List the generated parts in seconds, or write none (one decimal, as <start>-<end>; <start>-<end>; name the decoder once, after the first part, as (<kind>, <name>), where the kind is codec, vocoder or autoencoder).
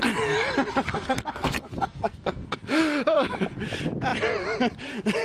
0.9-2.8 (codec, SNAC)